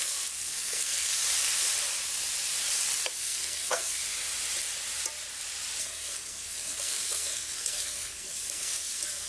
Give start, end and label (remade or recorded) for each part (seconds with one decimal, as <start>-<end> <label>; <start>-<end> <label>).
0.0-1.2 remade; 1.2-3.1 recorded; 3.1-4.0 remade; 4.0-5.8 recorded; 5.8-9.3 remade